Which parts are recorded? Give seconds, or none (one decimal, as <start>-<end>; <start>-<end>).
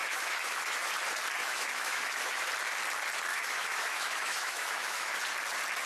0.9-1.4; 2.5-3.3; 5.2-5.9